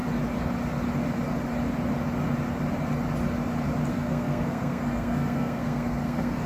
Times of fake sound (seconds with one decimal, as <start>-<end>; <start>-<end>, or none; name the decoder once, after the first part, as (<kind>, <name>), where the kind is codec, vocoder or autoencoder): 3.9-6.5 (codec, SNAC)